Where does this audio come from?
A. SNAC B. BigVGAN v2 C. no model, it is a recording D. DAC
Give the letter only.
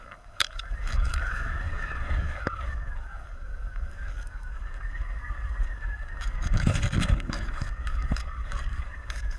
D